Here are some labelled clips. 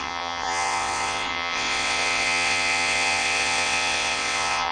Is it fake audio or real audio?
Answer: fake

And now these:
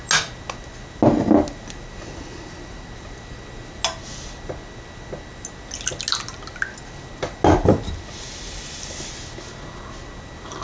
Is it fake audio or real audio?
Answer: real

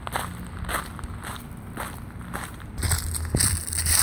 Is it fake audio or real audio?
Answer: real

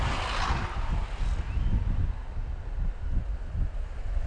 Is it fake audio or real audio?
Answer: real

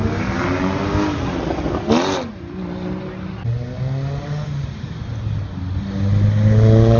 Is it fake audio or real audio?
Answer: real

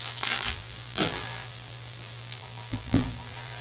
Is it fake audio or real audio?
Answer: fake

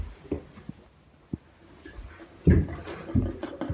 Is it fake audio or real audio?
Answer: real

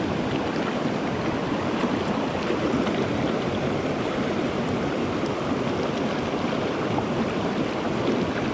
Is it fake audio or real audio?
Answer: real